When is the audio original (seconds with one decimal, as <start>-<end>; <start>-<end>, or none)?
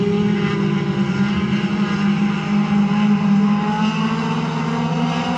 0.0-5.4